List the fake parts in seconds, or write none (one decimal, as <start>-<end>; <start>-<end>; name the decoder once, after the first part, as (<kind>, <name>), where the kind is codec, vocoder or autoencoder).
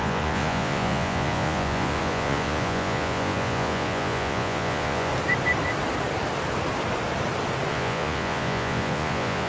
0.0-5.1 (vocoder, Vocos); 7.7-9.5